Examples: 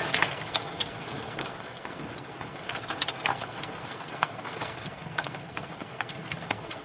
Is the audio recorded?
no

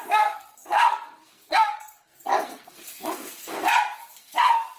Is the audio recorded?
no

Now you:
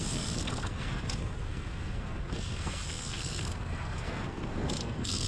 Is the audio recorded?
no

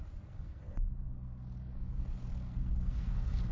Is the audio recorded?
no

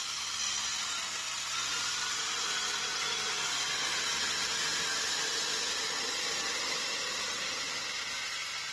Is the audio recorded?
yes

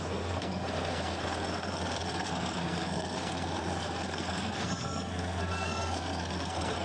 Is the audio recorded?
no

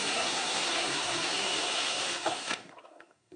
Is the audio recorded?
no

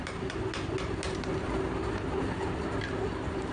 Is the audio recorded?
yes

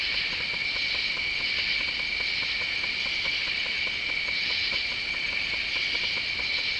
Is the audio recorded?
yes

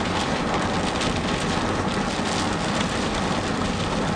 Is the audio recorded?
yes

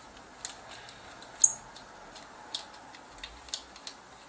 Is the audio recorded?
yes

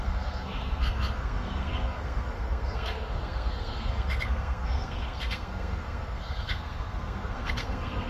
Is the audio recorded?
no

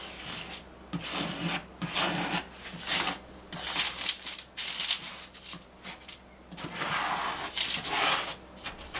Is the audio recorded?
yes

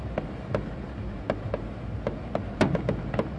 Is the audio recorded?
yes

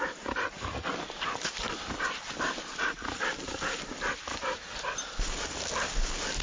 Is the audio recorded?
yes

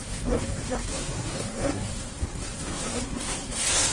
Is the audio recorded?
no